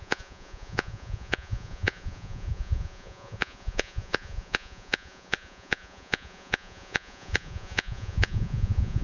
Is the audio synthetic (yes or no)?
yes